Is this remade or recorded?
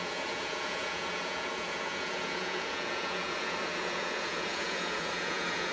remade